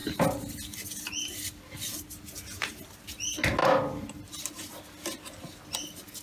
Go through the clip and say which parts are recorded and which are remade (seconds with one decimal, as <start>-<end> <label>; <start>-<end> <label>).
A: 0.0-6.2 recorded

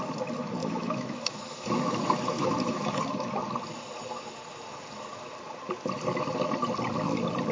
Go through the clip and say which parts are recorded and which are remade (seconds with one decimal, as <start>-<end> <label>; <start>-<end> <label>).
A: 0.0-0.6 recorded; 0.6-3.3 remade; 3.3-7.5 recorded

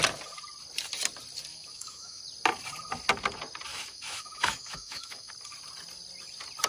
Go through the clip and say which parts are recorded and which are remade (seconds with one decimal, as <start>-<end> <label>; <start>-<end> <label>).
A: 0.0-1.5 recorded; 1.5-2.2 remade; 2.2-3.7 recorded; 3.7-5.3 remade; 5.3-6.7 recorded

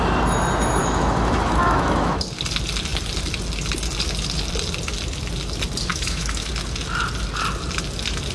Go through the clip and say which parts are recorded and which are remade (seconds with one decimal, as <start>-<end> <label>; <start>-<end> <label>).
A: 0.0-0.8 recorded; 0.8-2.2 remade; 2.2-5.9 recorded; 5.9-6.5 remade; 6.5-8.3 recorded

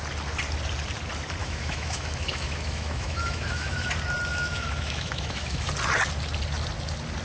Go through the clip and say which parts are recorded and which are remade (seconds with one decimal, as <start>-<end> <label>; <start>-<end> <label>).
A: 0.0-1.4 recorded; 1.4-3.9 remade; 3.9-4.3 recorded; 4.3-5.7 remade; 5.7-7.2 recorded

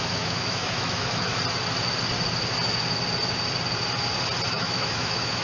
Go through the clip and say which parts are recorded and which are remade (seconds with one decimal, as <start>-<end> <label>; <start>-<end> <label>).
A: 0.0-1.3 remade; 1.3-4.5 recorded; 4.5-5.4 remade

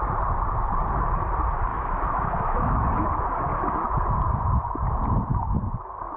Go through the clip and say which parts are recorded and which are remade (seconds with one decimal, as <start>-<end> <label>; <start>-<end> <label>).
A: 0.0-1.7 recorded; 1.7-3.1 remade; 3.1-6.2 recorded

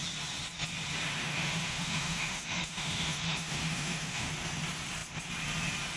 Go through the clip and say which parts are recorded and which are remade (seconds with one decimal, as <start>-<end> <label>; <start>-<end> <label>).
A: 0.0-1.2 recorded; 1.2-4.3 remade; 4.3-6.0 recorded